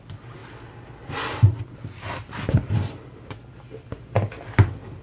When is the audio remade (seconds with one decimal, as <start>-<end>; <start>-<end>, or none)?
none